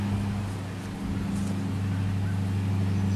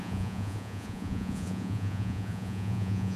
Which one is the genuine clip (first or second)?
first